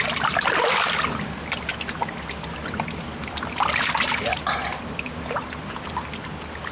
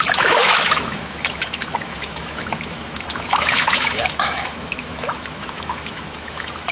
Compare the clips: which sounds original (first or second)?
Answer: first